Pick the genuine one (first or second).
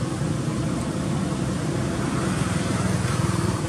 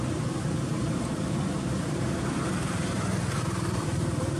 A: first